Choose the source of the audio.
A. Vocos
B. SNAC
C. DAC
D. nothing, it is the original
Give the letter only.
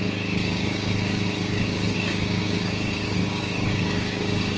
C